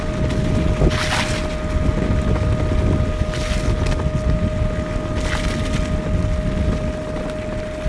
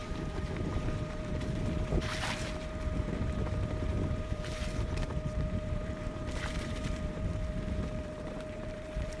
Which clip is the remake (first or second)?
second